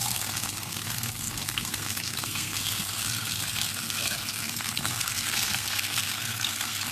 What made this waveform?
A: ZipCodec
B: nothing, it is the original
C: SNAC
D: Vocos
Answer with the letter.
C